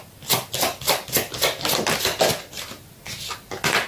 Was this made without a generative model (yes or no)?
yes